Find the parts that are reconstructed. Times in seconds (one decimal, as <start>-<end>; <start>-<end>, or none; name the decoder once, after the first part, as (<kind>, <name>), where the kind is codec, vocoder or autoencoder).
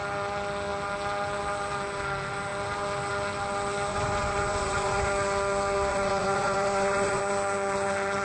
3.9-5.1 (vocoder, Vocos); 5.9-7.2